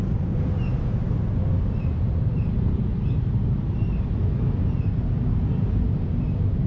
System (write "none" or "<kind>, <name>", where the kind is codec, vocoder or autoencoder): none